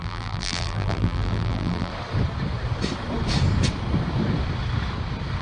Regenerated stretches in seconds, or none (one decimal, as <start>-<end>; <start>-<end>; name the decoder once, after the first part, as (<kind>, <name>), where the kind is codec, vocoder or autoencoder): 0.0-1.9 (vocoder, BigVGAN v2)